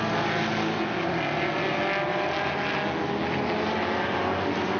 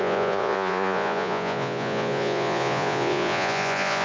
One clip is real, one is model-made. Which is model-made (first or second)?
second